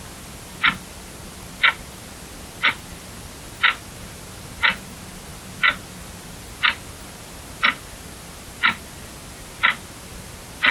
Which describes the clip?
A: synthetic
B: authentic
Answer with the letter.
B